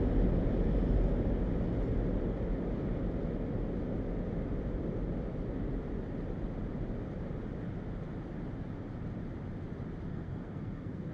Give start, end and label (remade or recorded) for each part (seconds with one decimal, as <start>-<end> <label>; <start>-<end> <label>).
0.0-10.1 recorded; 10.1-11.1 remade